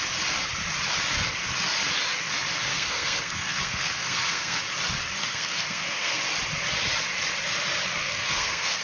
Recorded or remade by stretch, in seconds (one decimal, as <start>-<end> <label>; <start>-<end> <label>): 0.0-2.7 recorded; 2.7-4.6 remade; 4.6-5.2 recorded; 5.2-6.2 remade; 6.2-8.0 recorded; 8.0-8.8 remade